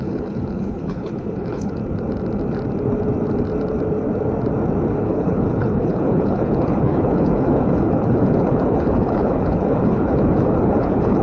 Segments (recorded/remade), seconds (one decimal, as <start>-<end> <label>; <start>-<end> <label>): 0.0-1.8 remade; 1.8-4.9 recorded; 4.9-11.2 remade